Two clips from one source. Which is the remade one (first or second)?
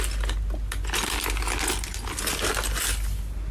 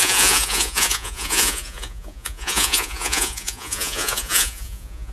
second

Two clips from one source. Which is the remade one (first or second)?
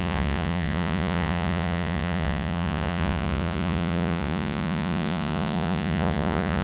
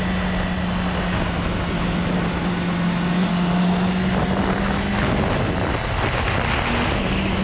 first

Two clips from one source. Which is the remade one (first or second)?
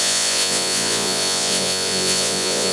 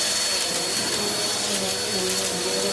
first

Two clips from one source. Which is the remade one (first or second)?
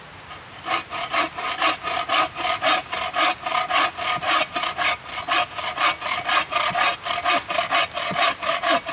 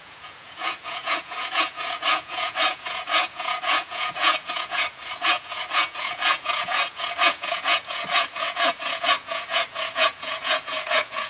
second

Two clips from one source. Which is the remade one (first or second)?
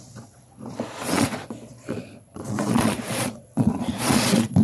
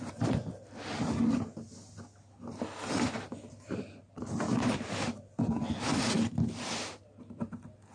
first